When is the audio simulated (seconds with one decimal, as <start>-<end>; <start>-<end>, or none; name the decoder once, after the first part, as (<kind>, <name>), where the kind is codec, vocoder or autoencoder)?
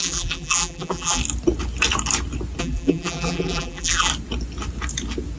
0.0-1.2 (vocoder, BigVGAN v2); 2.6-4.1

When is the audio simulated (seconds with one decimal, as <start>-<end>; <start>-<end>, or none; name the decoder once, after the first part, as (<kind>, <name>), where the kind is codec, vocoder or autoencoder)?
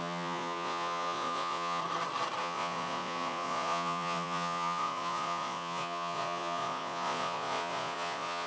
0.0-1.8 (vocoder, Vocos); 2.4-8.5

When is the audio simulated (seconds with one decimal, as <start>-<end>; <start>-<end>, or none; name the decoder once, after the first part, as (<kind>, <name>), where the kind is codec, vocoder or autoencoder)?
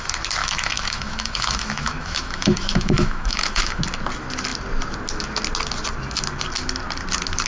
0.4-3.8 (autoencoder, DAC-VAE)